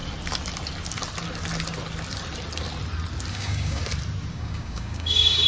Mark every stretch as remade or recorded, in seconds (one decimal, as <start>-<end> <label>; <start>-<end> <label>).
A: 0.0-3.3 recorded; 3.3-3.8 remade; 3.8-4.3 recorded; 4.3-5.5 remade